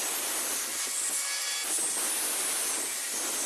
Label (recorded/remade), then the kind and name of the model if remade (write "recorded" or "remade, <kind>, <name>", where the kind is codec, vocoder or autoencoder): recorded